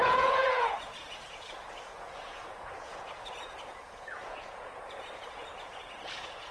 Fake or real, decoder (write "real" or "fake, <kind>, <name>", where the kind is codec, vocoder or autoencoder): fake, vocoder, Vocos